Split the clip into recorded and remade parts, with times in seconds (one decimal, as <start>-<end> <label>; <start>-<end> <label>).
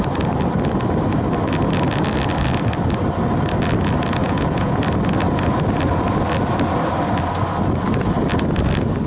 0.0-4.2 recorded; 4.2-4.8 remade; 4.8-9.1 recorded